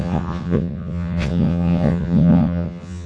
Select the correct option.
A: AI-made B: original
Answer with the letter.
A